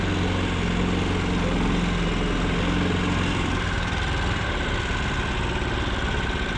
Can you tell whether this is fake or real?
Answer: real